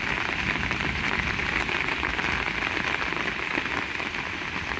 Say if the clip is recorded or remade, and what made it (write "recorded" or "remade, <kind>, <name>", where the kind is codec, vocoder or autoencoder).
recorded